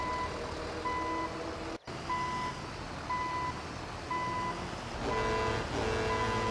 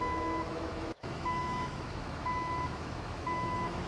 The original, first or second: first